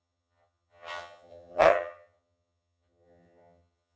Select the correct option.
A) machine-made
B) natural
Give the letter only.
A